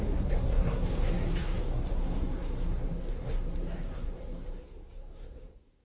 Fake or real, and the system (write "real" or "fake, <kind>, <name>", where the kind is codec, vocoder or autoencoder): fake, codec, SNAC